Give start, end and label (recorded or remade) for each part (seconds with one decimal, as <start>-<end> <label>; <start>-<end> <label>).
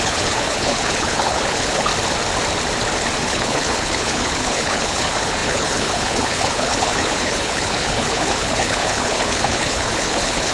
0.0-1.9 remade; 1.9-3.2 recorded; 3.2-10.5 remade